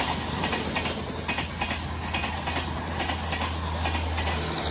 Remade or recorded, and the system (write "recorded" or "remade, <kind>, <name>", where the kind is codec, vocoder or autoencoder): recorded